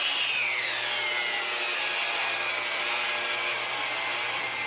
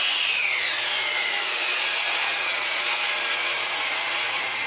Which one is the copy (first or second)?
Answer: second